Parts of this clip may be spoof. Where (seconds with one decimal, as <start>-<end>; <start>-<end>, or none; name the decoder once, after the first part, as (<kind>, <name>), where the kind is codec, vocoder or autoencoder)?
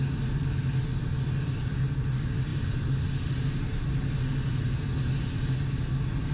none